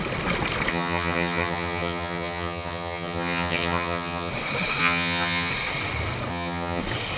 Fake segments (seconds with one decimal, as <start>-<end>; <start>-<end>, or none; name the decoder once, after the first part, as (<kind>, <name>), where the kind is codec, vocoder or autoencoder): 0.7-4.3 (vocoder, HiFi-GAN); 4.8-5.5; 6.3-6.8